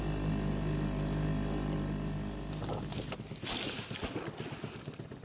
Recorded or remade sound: recorded